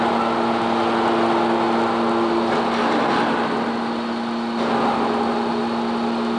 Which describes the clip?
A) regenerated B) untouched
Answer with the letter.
B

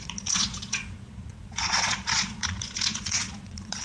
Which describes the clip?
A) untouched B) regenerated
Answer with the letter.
B